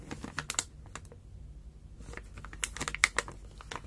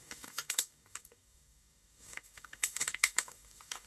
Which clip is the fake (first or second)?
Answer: second